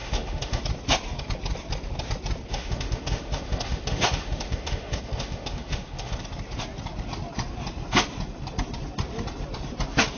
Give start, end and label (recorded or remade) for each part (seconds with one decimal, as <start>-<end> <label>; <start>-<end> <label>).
0.0-0.6 remade; 0.6-2.5 recorded; 2.5-6.2 remade; 6.2-10.2 recorded